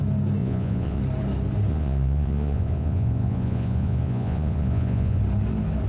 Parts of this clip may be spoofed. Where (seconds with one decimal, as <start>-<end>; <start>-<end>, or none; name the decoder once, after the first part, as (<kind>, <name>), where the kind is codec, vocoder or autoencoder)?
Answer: 0.4-1.0 (vocoder, Vocos); 1.7-5.2